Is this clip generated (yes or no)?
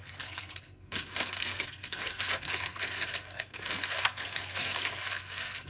yes